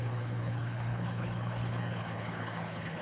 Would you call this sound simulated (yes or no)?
yes